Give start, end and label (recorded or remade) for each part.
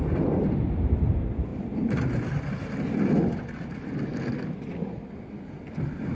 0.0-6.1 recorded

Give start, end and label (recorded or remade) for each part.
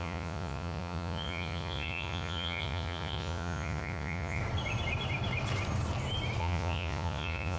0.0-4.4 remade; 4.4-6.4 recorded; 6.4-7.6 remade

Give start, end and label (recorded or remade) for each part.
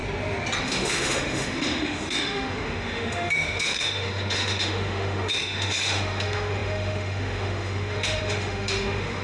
0.0-0.6 recorded; 0.6-9.2 remade